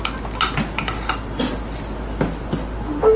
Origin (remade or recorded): recorded